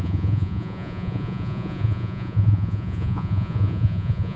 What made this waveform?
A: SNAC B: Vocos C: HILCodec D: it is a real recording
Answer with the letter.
B